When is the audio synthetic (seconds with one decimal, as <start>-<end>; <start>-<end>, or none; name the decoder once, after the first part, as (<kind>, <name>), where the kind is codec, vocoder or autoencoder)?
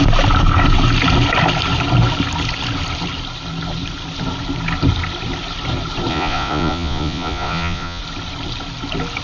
6.1-8.0 (vocoder, Vocos)